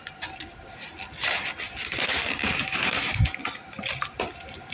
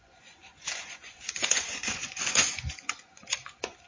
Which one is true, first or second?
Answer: first